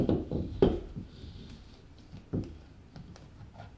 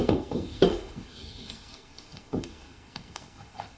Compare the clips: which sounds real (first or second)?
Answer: first